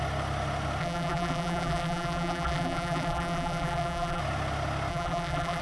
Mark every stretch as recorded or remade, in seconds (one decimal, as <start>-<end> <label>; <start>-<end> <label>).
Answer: 0.0-0.8 recorded; 0.8-4.2 remade; 4.2-4.9 recorded; 4.9-5.6 remade